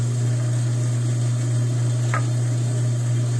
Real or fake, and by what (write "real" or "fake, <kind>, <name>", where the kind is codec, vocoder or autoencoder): real